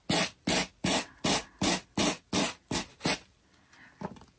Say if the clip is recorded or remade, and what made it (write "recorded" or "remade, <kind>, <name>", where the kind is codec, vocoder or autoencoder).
recorded